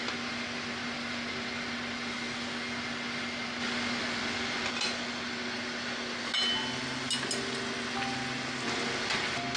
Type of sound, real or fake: real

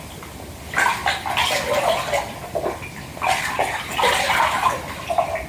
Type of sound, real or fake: real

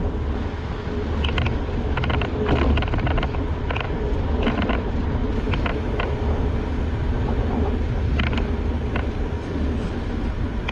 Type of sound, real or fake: real